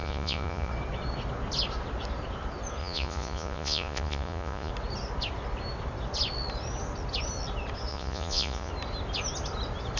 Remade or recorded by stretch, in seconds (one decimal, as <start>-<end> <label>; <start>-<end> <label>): 0.0-0.7 remade; 0.7-2.8 recorded; 2.8-4.7 remade; 4.7-7.9 recorded; 7.9-8.7 remade; 8.7-10.0 recorded